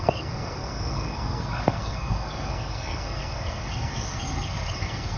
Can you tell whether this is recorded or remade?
remade